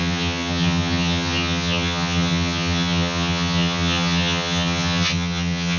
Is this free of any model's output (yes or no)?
no